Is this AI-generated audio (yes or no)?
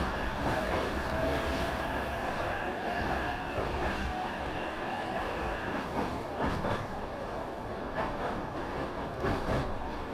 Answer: yes